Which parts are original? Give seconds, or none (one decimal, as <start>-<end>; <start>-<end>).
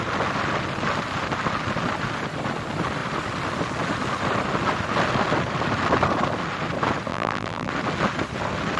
0.0-7.1; 7.7-8.8